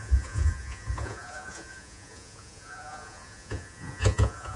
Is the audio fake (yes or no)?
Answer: yes